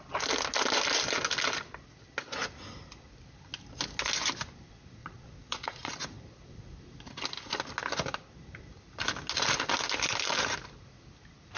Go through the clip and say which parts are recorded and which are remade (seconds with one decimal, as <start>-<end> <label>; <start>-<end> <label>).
0.0-5.0 recorded; 5.0-5.9 remade; 5.9-11.6 recorded